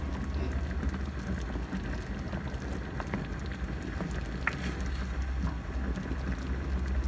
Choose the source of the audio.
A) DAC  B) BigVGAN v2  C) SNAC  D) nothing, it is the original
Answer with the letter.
D